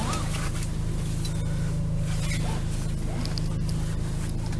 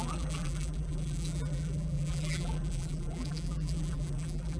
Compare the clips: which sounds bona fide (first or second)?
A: first